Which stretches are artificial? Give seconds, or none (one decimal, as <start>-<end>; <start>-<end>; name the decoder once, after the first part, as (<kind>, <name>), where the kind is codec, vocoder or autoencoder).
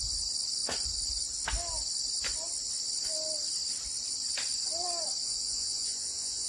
5.2-6.5 (vocoder, Vocos)